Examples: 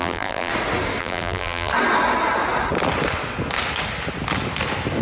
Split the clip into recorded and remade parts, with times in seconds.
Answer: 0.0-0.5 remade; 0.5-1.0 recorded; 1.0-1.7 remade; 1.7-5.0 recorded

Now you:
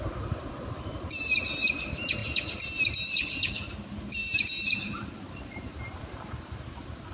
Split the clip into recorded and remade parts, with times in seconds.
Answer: 0.0-2.2 remade; 2.2-3.7 recorded; 3.7-7.1 remade

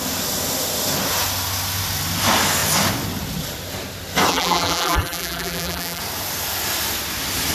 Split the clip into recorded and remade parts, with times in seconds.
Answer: 0.0-4.3 recorded; 4.3-6.0 remade; 6.0-7.5 recorded